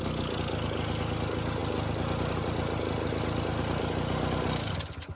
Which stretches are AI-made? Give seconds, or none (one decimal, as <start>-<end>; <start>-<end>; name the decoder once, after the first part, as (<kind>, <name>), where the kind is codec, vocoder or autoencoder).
none